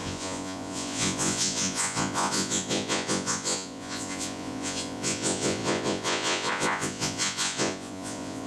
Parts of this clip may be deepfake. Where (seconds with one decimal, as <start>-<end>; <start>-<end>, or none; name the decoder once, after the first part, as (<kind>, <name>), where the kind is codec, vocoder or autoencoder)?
0.0-8.5 (vocoder, Vocos)